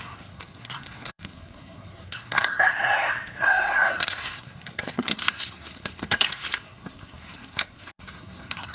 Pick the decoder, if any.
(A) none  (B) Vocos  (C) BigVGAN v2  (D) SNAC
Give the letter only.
D